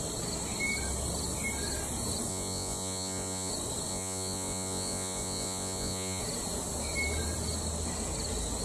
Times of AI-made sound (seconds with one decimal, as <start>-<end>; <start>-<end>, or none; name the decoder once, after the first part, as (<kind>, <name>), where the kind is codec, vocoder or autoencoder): 2.3-3.5 (vocoder, Vocos); 3.9-6.2